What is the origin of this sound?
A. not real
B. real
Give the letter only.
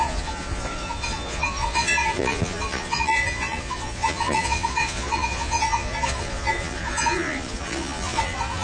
A